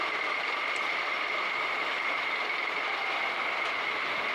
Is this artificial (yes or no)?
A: yes